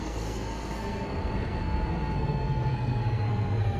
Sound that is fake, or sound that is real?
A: fake